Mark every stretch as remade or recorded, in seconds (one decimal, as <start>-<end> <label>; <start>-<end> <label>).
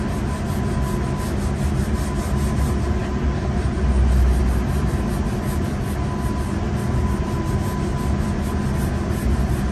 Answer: 0.0-9.7 recorded